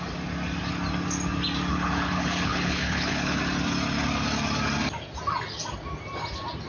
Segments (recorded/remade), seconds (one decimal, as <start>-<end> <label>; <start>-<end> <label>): 0.0-1.7 recorded; 1.7-3.4 remade; 3.4-6.7 recorded